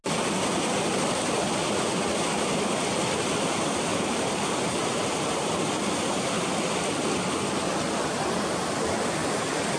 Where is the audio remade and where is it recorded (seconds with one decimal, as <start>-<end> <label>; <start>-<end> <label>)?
0.0-3.9 recorded; 3.9-4.4 remade; 4.4-9.8 recorded